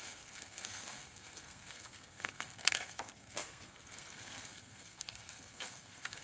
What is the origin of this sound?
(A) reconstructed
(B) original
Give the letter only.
A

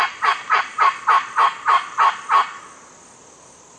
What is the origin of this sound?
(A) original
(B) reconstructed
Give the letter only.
A